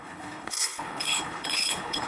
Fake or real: fake